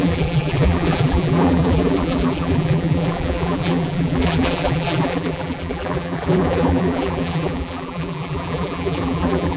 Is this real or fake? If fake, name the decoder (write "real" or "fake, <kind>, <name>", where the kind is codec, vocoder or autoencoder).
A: fake, vocoder, BigVGAN v2